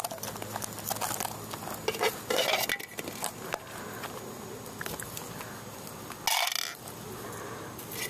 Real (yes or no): yes